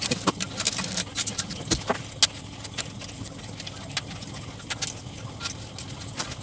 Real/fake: real